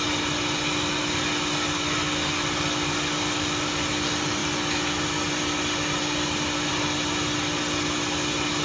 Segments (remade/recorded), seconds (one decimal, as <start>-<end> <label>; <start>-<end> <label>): 0.0-8.6 recorded